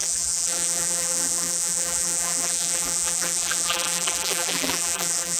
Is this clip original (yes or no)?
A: no